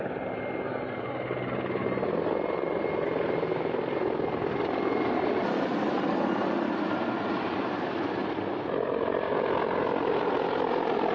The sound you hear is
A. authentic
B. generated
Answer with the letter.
A